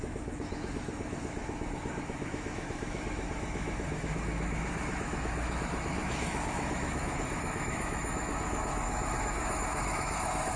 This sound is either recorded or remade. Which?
remade